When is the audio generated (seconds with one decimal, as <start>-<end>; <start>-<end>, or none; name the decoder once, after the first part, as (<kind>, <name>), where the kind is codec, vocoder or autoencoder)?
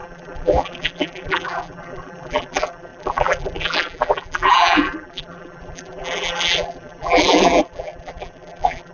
0.0-8.9 (vocoder, BigVGAN v2)